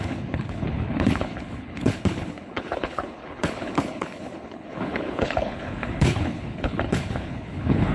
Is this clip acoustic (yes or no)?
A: no